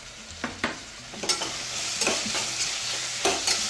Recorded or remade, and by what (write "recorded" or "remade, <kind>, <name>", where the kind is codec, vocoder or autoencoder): recorded